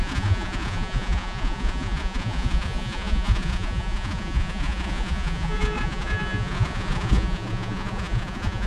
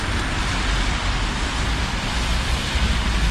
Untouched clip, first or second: second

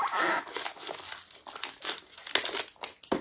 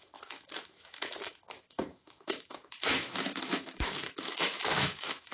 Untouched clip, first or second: first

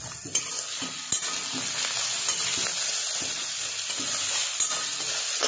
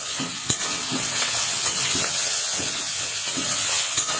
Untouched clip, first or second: first